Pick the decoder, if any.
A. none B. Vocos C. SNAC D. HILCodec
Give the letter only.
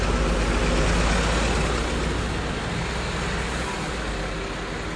A